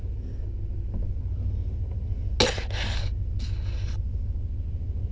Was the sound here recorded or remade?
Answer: recorded